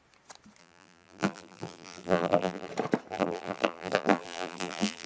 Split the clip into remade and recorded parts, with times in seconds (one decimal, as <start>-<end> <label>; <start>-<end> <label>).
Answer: 0.0-0.6 recorded; 0.6-2.7 remade; 2.7-3.1 recorded; 3.1-5.1 remade